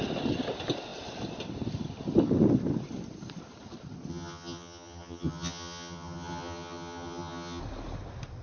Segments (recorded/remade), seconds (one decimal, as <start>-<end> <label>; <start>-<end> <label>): 0.0-4.1 recorded; 4.1-7.6 remade; 7.6-8.4 recorded